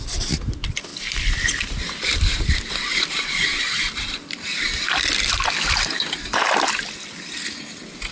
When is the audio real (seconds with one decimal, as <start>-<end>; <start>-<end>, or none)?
0.0-0.9; 2.6-8.1